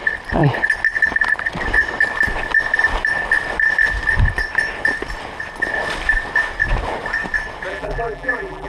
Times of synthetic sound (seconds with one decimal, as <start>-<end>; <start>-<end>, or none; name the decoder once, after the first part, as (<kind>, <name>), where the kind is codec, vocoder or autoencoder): 7.7-8.7 (vocoder, BigVGAN v2)